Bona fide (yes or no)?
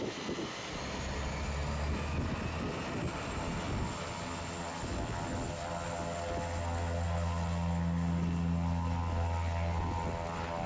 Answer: yes